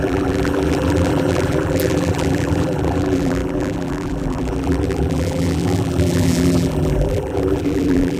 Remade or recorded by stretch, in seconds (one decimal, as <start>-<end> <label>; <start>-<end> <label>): 0.0-8.2 remade

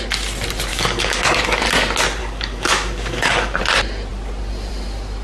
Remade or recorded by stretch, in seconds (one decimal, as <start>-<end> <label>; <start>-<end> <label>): 0.0-0.7 recorded; 0.7-1.6 remade; 1.6-2.2 recorded; 2.2-3.6 remade; 3.6-5.2 recorded

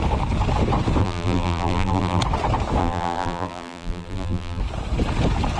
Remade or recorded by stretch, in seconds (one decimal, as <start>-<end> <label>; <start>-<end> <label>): 0.0-1.0 recorded; 1.0-2.2 remade; 2.2-2.8 recorded; 2.8-4.6 remade; 4.6-5.6 recorded

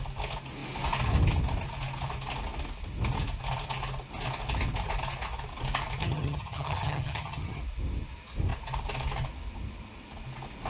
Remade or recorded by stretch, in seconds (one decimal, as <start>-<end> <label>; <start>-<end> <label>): 0.0-6.0 recorded; 6.0-7.6 remade; 7.6-10.7 recorded

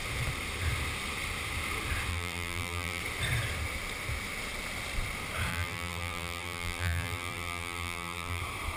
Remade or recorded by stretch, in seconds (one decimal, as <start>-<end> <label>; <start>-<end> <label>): 0.0-2.1 recorded; 2.1-3.0 remade; 3.0-5.5 recorded; 5.5-8.4 remade; 8.4-8.8 recorded